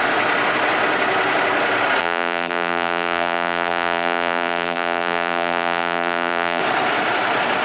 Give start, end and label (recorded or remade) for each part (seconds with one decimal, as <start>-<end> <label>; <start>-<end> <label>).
0.0-2.0 recorded; 2.0-6.6 remade; 6.6-7.6 recorded